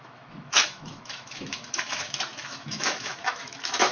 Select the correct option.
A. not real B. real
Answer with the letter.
A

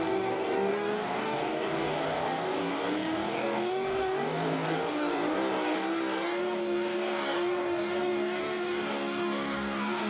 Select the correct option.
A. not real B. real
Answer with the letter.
A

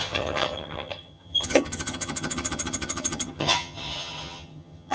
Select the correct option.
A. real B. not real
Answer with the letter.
B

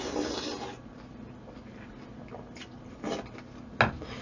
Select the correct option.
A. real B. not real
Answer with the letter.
A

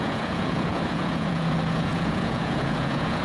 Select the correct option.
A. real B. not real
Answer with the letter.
B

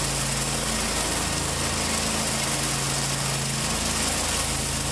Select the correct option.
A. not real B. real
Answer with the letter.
B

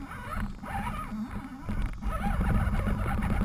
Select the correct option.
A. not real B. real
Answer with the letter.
B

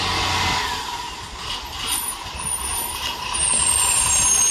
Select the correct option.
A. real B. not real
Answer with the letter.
A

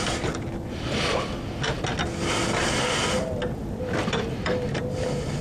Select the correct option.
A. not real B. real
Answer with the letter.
B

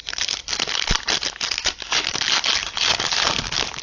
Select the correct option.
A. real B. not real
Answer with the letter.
A